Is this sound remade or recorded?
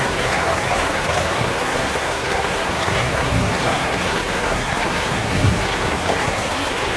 remade